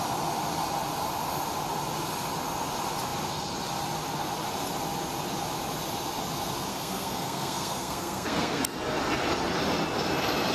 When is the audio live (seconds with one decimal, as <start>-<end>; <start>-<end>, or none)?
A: 0.0-6.7; 8.6-10.5